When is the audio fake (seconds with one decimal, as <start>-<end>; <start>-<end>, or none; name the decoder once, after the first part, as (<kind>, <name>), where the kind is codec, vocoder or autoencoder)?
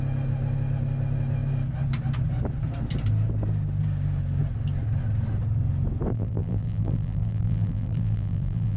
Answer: 6.1-8.8 (vocoder, BigVGAN v2)